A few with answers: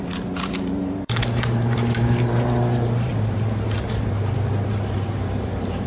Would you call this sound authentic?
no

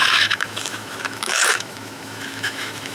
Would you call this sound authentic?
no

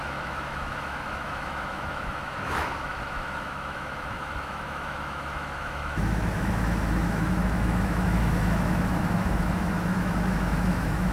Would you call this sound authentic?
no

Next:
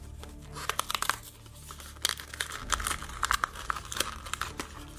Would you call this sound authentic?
yes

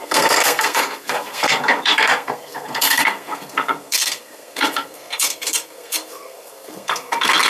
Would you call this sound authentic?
no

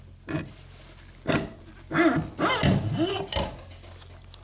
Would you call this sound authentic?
yes